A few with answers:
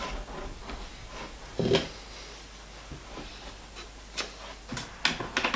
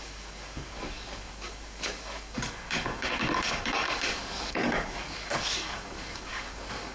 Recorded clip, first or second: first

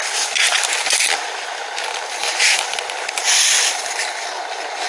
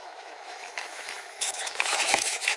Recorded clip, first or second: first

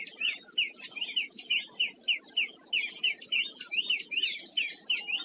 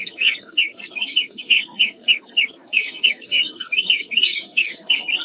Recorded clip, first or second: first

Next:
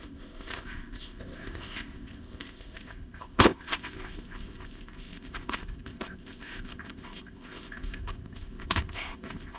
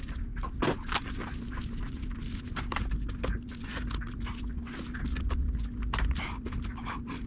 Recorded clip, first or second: second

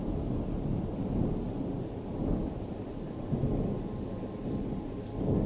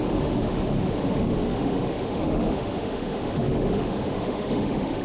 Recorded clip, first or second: first